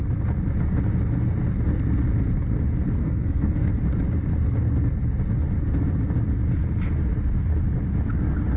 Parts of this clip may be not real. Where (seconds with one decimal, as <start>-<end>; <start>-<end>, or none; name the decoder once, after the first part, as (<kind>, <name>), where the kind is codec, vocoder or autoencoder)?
3.0-3.7 (codec, SNAC)